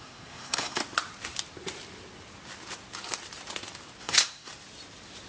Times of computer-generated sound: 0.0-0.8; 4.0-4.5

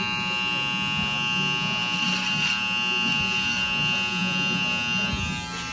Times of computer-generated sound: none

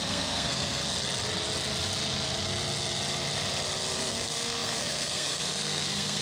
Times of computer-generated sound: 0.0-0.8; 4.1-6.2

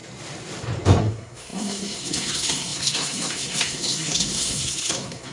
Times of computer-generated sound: 1.0-5.3

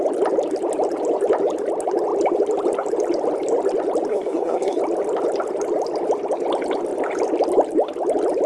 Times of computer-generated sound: 4.1-4.8

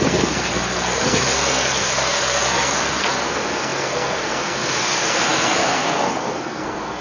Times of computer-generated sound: 0.0-7.0